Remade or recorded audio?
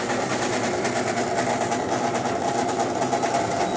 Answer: recorded